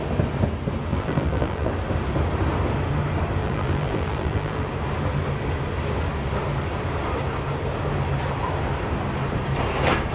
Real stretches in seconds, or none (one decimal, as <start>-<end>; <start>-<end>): 0.0-0.9; 1.7-3.4; 4.7-10.1